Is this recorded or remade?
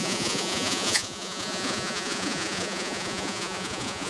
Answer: remade